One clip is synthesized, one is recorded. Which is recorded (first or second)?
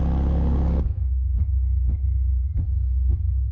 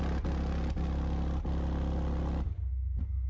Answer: second